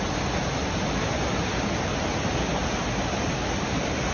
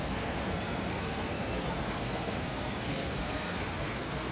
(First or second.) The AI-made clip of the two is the second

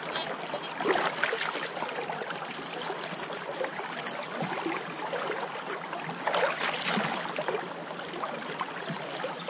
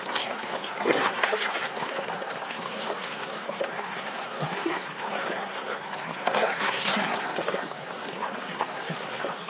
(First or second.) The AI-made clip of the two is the second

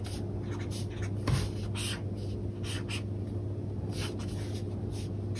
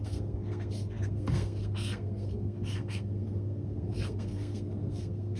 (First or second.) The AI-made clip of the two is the second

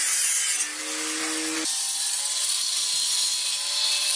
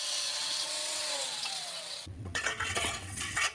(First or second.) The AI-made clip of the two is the second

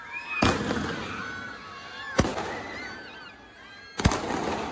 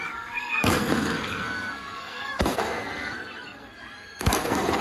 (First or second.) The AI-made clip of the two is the second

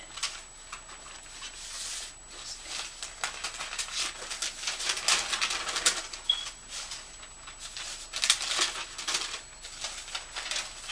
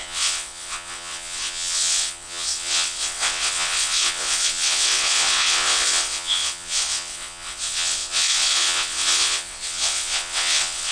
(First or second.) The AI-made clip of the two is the second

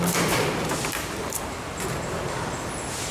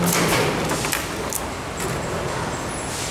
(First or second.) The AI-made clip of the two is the first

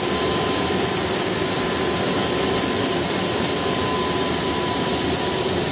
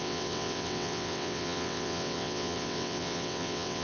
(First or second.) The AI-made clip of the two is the second